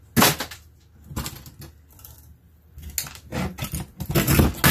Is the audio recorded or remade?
recorded